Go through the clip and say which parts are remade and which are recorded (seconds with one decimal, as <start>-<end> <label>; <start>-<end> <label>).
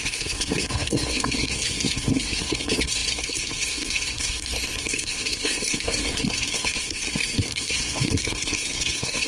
0.0-9.3 remade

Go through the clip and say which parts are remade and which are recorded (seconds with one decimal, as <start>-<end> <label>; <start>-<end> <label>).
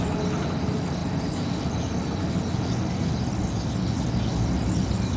0.0-5.2 recorded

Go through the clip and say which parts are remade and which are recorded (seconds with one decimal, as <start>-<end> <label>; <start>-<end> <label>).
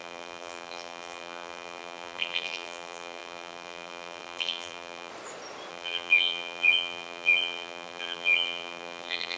0.0-5.1 remade; 5.1-5.7 recorded; 5.7-9.4 remade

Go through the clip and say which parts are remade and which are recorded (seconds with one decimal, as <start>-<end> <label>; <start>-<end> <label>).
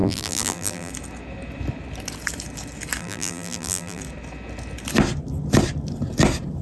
0.0-0.9 remade; 0.9-3.0 recorded; 3.0-4.0 remade; 4.0-6.6 recorded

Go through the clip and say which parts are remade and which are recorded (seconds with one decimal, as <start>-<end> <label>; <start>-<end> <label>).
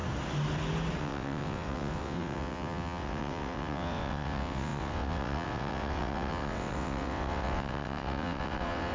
0.0-1.0 recorded; 1.0-8.9 remade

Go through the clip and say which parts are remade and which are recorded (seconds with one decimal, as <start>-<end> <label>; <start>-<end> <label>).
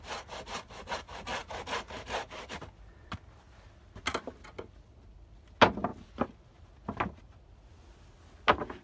0.0-8.8 recorded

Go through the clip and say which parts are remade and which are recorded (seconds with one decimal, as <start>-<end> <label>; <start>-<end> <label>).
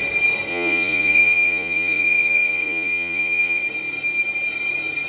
0.0-0.5 recorded; 0.5-3.6 remade; 3.6-5.1 recorded